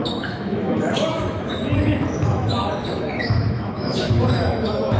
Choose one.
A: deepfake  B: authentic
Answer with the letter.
A